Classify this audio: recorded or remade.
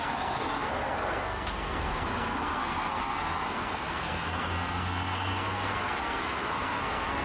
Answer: remade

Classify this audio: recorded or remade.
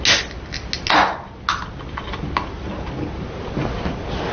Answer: recorded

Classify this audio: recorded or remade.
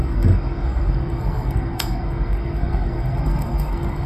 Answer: remade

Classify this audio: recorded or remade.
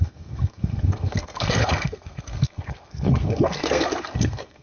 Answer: remade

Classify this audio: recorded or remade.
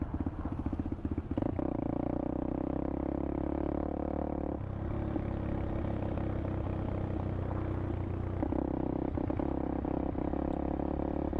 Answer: recorded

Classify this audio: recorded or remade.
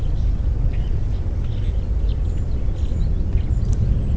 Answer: recorded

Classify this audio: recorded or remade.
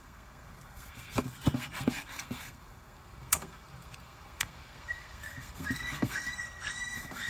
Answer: remade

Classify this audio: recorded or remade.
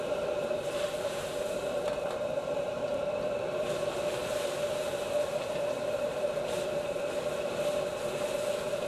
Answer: recorded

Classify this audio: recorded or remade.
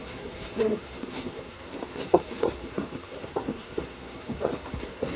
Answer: remade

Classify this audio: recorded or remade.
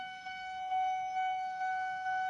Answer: remade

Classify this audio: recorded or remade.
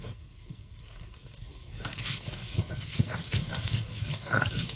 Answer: remade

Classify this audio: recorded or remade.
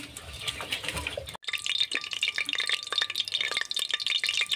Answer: recorded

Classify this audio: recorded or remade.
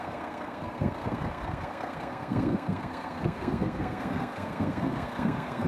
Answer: remade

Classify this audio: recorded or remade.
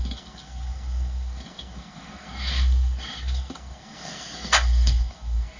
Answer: remade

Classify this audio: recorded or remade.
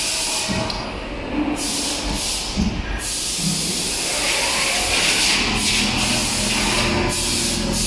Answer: recorded